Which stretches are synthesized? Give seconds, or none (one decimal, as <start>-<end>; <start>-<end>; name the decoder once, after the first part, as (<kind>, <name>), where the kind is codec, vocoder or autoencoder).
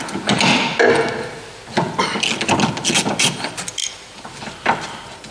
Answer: 3.8-4.3 (vocoder, BigVGAN v2)